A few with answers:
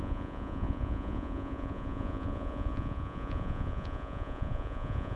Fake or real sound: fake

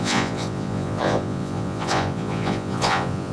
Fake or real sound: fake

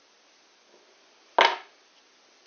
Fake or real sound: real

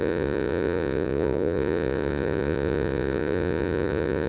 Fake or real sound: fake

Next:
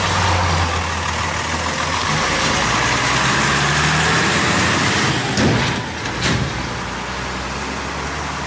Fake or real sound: real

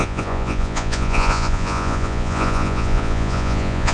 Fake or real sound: fake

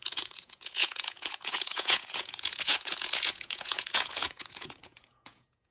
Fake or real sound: fake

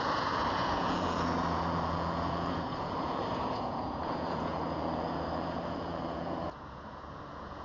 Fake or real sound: fake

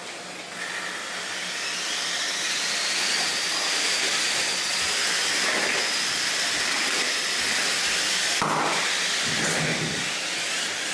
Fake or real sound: real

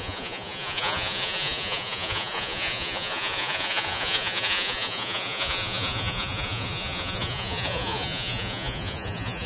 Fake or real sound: fake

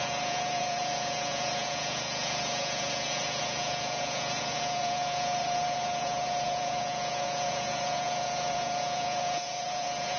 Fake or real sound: fake